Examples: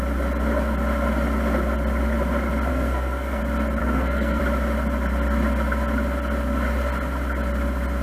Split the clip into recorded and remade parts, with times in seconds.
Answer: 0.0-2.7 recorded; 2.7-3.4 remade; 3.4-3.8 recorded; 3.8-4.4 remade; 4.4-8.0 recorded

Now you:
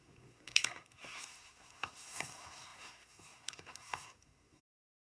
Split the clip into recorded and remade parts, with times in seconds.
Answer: 0.0-5.1 remade

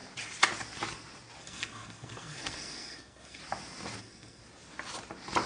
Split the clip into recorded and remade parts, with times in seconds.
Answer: 0.0-1.4 recorded; 1.4-3.4 remade; 3.4-4.0 recorded; 4.0-4.4 remade; 4.4-5.5 recorded

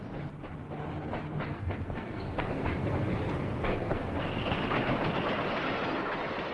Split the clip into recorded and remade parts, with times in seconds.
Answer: 0.0-1.5 recorded; 1.5-4.6 remade; 4.6-6.5 recorded

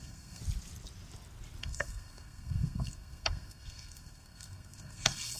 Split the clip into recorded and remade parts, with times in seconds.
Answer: 0.0-0.4 remade; 0.4-1.6 recorded; 1.6-5.4 remade

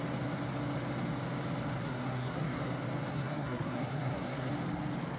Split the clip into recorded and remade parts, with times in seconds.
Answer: 0.0-1.8 recorded; 1.8-2.7 remade; 2.7-3.1 recorded; 3.1-4.5 remade; 4.5-5.2 recorded

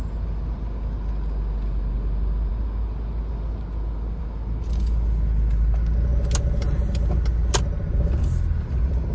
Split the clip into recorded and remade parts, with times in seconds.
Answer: 0.0-9.1 recorded

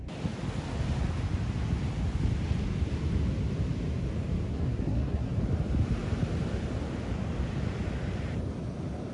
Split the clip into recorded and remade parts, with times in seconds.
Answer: 0.0-4.5 recorded; 4.5-5.3 remade; 5.3-9.1 recorded